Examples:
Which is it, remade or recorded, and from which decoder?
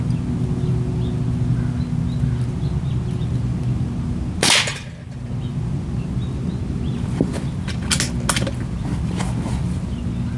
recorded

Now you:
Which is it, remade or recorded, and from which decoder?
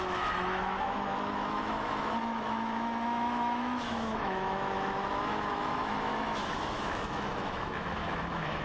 remade, autoencoder, DAC-VAE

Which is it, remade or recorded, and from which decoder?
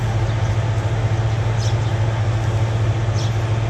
recorded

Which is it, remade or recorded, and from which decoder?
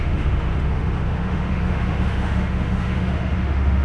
remade, autoencoder, DAC-VAE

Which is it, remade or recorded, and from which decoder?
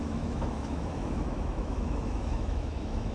remade, autoencoder, DAC-VAE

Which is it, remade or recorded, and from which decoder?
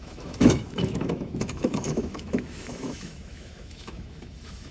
remade, autoencoder, DAC-VAE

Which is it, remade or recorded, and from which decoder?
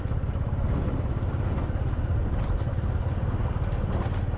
recorded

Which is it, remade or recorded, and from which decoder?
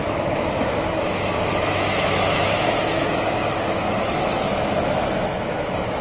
remade, autoencoder, DAC-VAE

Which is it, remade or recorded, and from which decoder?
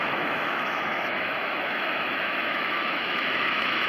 remade, autoencoder, DAC-VAE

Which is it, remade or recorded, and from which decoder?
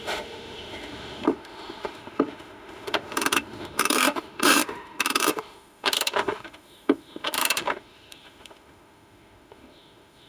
remade, autoencoder, DAC-VAE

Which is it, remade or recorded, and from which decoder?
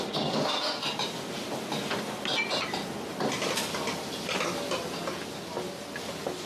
recorded